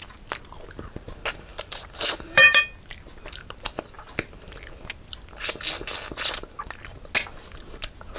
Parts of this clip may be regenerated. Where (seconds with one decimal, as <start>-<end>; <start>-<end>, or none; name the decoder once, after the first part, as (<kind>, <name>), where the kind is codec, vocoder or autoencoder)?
1.5-2.6 (vocoder, BigVGAN v2)